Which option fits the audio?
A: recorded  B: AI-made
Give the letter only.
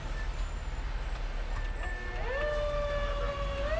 A